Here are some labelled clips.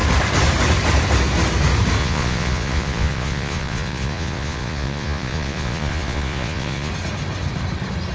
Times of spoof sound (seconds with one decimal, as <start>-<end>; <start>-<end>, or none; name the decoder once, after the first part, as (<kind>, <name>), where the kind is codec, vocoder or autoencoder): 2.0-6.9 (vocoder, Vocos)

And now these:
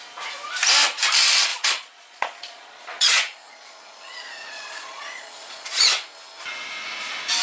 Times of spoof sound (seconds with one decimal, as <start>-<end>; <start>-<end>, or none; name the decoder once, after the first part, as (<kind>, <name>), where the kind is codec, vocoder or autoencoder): 1.5-5.9 (vocoder, Vocos)

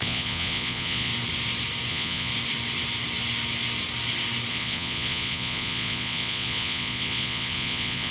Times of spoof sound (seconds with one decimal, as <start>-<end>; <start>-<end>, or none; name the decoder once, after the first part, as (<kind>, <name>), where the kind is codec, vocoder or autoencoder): 0.0-1.1 (vocoder, Vocos); 1.9-2.3; 4.5-8.1

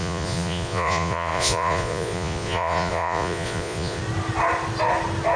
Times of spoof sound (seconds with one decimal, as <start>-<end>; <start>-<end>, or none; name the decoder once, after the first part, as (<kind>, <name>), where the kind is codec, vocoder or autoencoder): 0.0-4.0 (vocoder, Vocos)